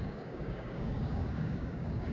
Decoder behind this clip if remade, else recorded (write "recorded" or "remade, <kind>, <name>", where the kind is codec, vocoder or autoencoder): remade, codec, DAC